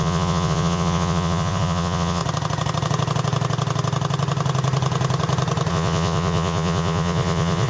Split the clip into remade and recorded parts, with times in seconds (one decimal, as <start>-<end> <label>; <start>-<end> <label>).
0.0-2.2 remade; 2.2-5.7 recorded; 5.7-7.7 remade